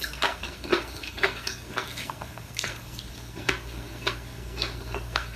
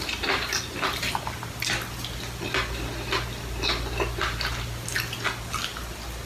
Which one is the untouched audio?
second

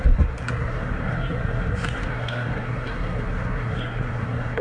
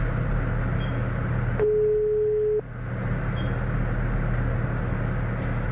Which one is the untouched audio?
second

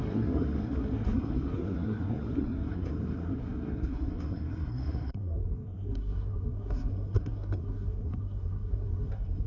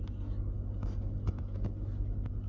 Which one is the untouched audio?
second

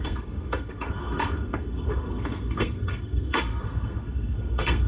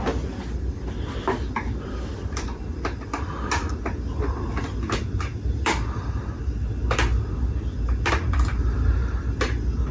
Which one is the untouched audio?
second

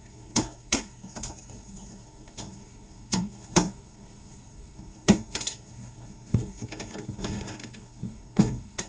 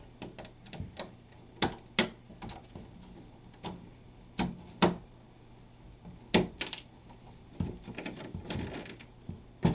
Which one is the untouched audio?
second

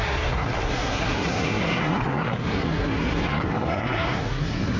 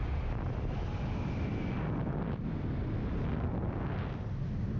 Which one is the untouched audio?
second